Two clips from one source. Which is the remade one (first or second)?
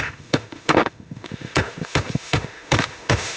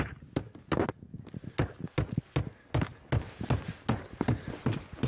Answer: first